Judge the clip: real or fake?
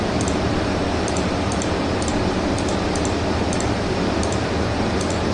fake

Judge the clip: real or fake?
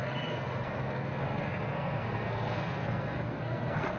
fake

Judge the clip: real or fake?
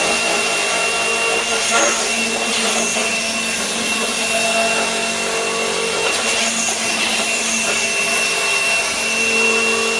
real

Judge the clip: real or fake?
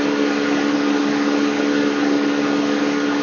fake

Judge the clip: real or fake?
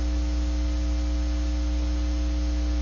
real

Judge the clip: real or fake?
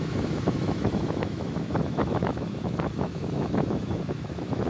fake